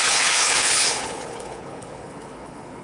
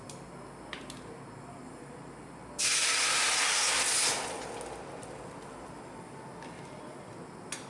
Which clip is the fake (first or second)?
first